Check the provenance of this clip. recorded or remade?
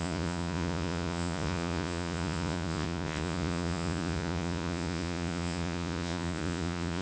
remade